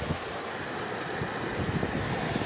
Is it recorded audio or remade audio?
recorded